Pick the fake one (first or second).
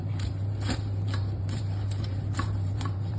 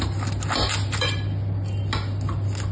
first